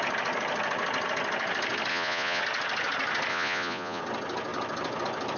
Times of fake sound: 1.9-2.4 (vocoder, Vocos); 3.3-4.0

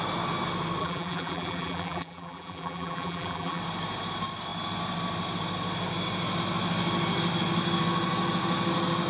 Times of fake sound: 0.8-3.6 (vocoder, BigVGAN v2)

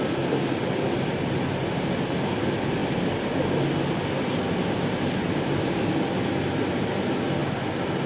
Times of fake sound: none

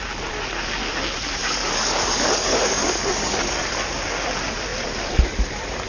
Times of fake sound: 1.4-3.7 (codec, DAC)

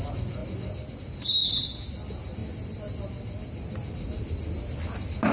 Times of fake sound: none